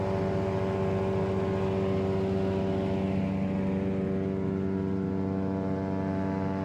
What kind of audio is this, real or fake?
real